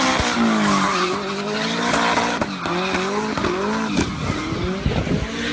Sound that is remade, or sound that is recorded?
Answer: recorded